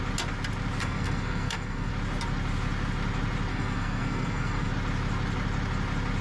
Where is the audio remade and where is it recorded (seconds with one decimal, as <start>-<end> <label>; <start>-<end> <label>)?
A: 0.0-0.8 recorded; 0.8-1.9 remade; 1.9-3.5 recorded; 3.5-4.7 remade; 4.7-6.2 recorded